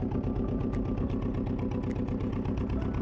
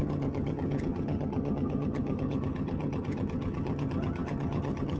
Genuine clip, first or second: first